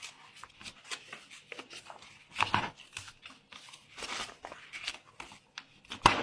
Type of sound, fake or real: real